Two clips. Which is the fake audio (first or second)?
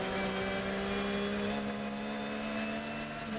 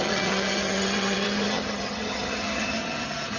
second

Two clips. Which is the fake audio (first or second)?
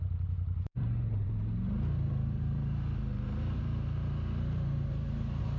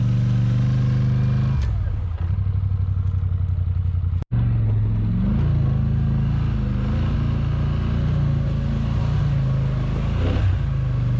first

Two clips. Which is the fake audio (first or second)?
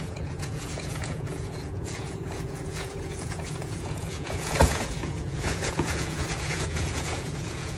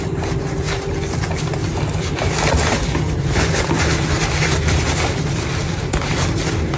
first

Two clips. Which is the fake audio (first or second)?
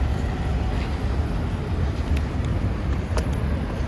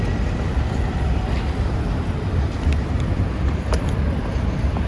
second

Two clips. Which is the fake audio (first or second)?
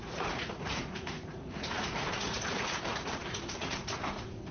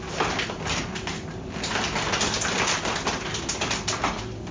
first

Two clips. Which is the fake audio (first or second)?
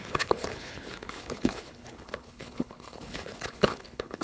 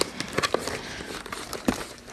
first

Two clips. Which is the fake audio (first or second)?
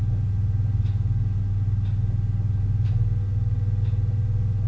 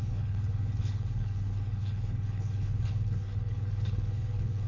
second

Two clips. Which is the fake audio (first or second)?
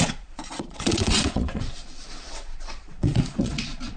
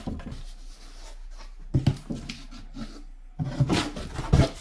first